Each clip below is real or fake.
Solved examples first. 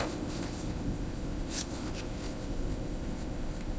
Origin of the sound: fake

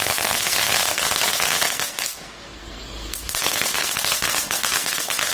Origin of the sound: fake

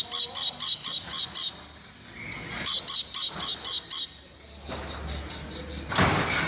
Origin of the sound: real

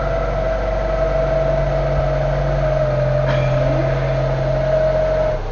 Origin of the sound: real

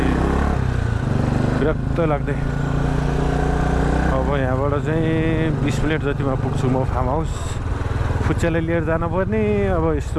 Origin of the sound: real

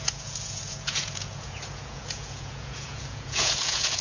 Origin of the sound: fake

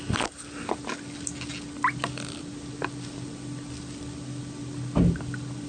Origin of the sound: real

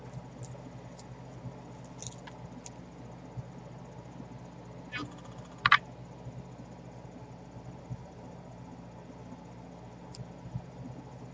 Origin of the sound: real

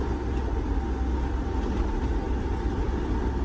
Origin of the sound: real